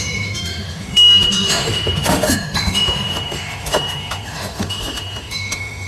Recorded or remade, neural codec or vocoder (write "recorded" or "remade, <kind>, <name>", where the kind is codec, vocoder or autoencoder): remade, autoencoder, DAC-VAE